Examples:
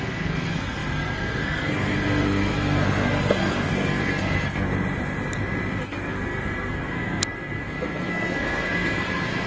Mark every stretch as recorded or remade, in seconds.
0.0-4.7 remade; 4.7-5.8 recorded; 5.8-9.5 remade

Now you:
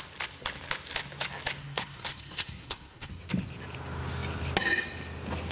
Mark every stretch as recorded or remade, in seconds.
0.0-1.6 recorded; 1.6-3.1 remade; 3.1-5.5 recorded